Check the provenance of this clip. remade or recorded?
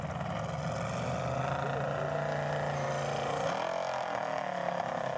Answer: recorded